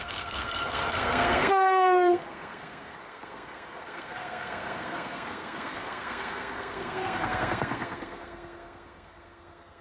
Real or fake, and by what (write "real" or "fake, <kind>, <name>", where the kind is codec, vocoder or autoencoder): fake, codec, SNAC